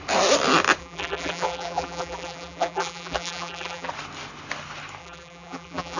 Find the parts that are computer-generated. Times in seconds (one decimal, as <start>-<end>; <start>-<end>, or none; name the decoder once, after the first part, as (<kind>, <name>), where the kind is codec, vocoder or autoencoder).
0.8-3.9 (vocoder, BigVGAN v2); 5.0-6.0